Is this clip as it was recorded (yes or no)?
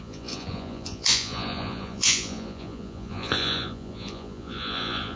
no